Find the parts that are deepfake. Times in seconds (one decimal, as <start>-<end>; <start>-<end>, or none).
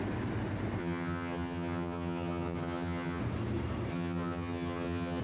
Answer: 0.8-3.2; 3.9-5.2